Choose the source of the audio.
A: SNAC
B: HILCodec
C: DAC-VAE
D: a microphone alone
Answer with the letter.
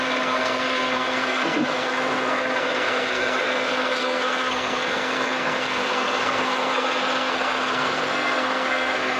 A